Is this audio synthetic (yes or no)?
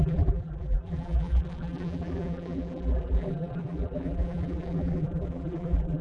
yes